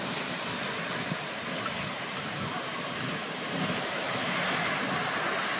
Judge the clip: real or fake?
real